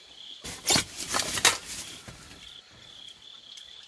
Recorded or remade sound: recorded